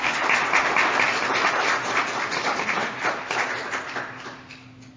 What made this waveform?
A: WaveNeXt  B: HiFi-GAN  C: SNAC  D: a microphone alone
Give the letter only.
D